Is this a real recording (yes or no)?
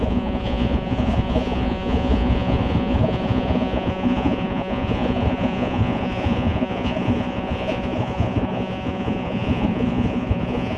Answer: no